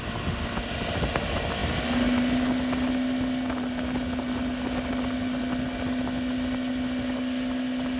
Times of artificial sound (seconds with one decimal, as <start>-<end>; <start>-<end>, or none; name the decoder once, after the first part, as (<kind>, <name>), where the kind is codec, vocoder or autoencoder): none